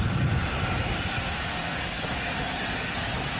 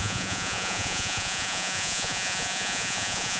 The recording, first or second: first